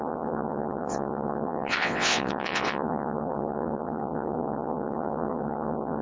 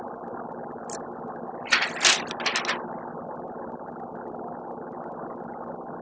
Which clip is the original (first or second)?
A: second